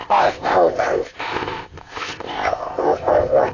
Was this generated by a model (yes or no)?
yes